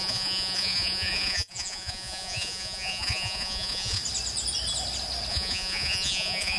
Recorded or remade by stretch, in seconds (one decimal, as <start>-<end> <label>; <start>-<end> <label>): 0.0-4.0 remade; 4.0-5.3 recorded; 5.3-6.6 remade